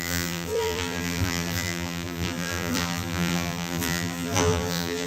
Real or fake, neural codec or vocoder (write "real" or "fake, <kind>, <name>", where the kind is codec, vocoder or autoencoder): fake, vocoder, BigVGAN v2